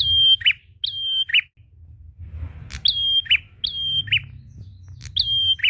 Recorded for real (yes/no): yes